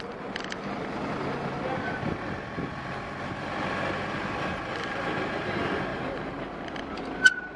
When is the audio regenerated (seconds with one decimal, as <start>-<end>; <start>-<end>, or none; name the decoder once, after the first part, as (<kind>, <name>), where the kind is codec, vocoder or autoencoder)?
none